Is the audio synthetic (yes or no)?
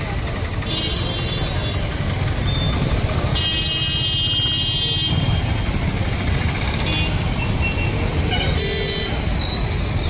no